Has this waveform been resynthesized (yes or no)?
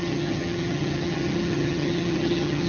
yes